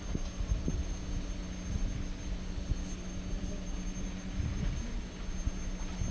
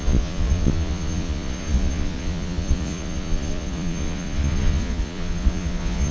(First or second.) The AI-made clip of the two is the second